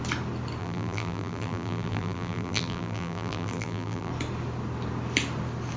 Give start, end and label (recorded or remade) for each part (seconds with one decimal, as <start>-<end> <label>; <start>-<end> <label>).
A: 0.0-0.6 recorded; 0.6-4.1 remade; 4.1-5.8 recorded